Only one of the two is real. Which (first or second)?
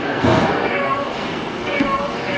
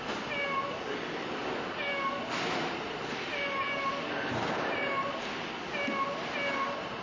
second